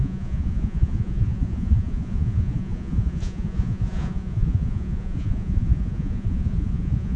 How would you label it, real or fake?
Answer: fake